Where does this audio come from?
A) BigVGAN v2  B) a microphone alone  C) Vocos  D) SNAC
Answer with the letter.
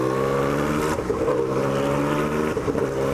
B